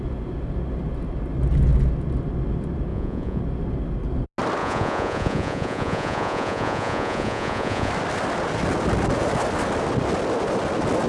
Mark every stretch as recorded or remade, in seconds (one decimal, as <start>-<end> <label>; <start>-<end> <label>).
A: 0.0-2.9 recorded; 2.9-3.4 remade; 3.4-4.6 recorded; 4.6-7.9 remade; 7.9-11.1 recorded